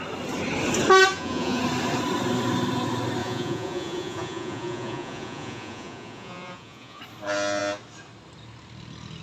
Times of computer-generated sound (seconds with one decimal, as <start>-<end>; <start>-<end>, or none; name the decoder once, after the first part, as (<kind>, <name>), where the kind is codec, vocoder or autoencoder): 1.1-1.6 (vocoder, Vocos); 3.2-7.0